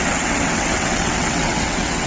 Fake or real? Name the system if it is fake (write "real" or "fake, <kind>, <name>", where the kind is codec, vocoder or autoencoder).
fake, vocoder, WaveNeXt